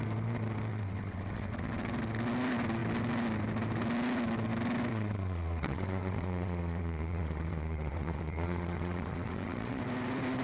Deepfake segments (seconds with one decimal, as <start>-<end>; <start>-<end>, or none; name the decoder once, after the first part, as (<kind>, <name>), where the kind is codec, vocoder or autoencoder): 0.7-1.9 (vocoder, WaveNeXt); 4.9-9.8